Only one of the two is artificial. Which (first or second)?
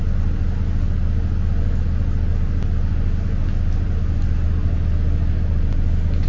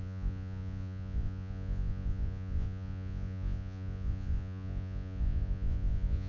second